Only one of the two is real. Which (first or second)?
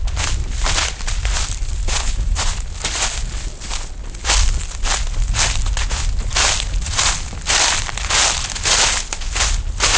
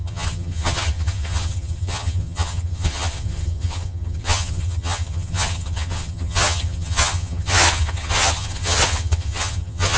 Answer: first